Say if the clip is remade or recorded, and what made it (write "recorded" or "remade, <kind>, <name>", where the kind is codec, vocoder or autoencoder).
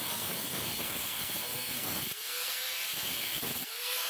remade, codec, SNAC